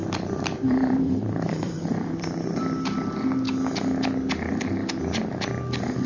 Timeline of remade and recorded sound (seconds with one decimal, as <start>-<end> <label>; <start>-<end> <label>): 0.0-2.6 remade; 2.6-6.1 recorded